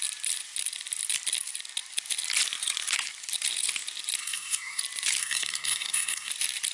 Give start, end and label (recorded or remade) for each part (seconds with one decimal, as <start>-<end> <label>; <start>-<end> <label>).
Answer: 0.0-4.2 recorded; 4.2-4.8 remade; 4.8-5.2 recorded; 5.2-6.3 remade; 6.3-6.7 recorded